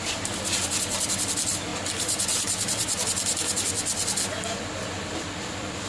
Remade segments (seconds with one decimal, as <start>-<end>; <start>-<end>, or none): none